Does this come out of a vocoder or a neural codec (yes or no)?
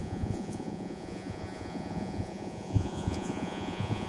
yes